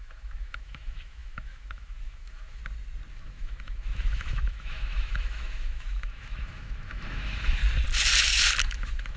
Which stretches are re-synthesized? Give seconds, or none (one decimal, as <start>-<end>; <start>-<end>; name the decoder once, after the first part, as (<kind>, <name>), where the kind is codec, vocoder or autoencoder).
0.0-2.6 (autoencoder, DAC-VAE); 3.1-7.6; 8.6-9.2